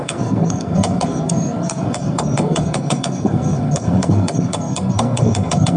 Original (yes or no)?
no